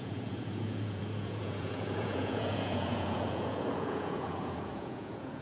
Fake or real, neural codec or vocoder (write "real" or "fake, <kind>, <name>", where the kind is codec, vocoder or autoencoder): fake, vocoder, Vocos